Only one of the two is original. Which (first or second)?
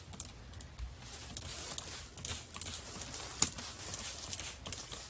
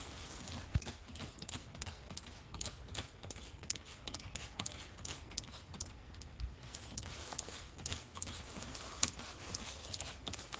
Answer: first